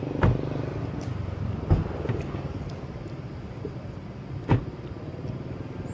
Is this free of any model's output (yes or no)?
yes